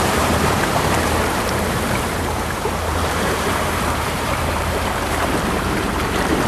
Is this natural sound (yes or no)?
no